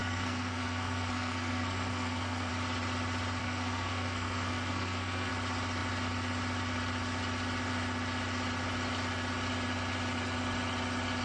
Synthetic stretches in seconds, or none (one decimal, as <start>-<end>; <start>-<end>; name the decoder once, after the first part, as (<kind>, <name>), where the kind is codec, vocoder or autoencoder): 0.0-2.5 (codec, SNAC); 3.4-5.3